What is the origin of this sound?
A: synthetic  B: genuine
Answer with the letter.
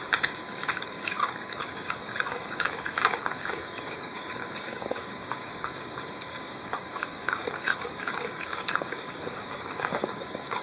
A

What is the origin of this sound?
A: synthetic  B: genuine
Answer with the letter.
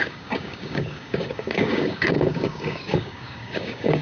A